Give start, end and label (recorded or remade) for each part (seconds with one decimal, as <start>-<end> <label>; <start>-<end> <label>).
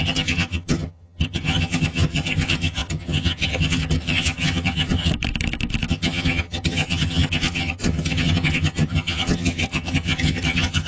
0.0-5.1 remade; 5.1-5.9 recorded; 5.9-10.9 remade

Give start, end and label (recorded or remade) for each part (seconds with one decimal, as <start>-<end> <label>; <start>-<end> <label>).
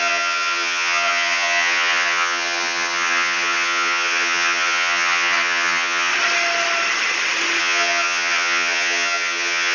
0.0-6.1 remade; 6.1-7.6 recorded; 7.6-9.7 remade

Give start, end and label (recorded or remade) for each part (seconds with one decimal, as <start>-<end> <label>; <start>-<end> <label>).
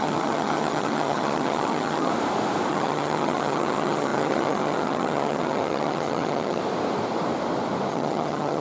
0.0-2.1 remade; 2.1-2.7 recorded; 2.7-6.6 remade; 6.6-7.9 recorded; 7.9-8.6 remade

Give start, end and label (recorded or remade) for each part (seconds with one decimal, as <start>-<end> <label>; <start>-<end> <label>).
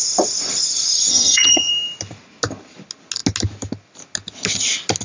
0.0-1.1 recorded; 1.1-1.7 remade; 1.7-5.0 recorded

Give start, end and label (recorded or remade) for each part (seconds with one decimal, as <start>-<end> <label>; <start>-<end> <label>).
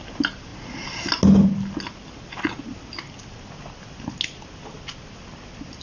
0.0-5.8 recorded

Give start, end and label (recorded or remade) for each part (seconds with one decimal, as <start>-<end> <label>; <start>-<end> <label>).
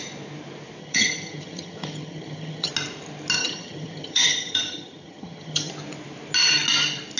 0.0-0.8 recorded; 0.8-2.7 remade; 2.7-3.4 recorded; 3.4-5.7 remade; 5.7-7.2 recorded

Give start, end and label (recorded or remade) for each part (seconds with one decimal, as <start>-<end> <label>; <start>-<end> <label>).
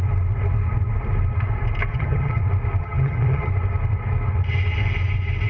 0.0-1.9 recorded; 1.9-2.4 remade; 2.4-2.8 recorded; 2.8-3.5 remade; 3.5-5.5 recorded